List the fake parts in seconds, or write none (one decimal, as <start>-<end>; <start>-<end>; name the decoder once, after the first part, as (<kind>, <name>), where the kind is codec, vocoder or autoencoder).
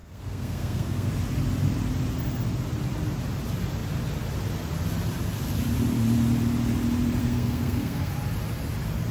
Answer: 0.0-1.1 (codec, SNAC); 7.2-8.1